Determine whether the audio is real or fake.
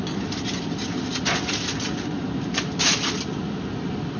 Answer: real